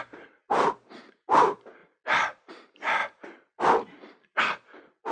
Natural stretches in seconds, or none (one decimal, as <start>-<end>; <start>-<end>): 0.0-5.1